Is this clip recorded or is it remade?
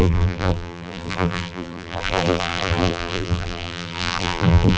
remade